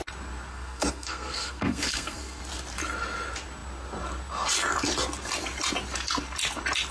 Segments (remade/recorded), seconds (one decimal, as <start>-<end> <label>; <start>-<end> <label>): 0.0-0.5 recorded; 0.5-2.4 remade; 2.4-6.9 recorded